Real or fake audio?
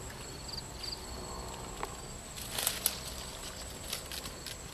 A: real